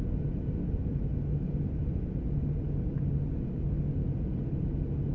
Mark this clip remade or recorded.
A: recorded